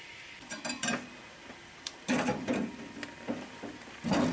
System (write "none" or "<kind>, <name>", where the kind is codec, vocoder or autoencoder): vocoder, BigVGAN v2